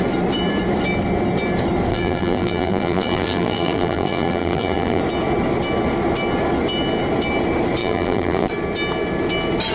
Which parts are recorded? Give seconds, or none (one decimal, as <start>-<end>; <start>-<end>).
0.0-1.9; 5.0-7.8; 8.5-9.7